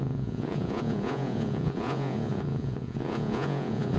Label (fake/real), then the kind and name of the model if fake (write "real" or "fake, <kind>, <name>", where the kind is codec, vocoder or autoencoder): fake, vocoder, Vocos